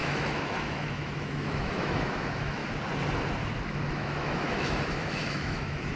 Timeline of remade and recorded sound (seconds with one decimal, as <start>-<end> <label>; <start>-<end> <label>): 0.0-2.6 remade; 2.6-3.7 recorded; 3.7-6.0 remade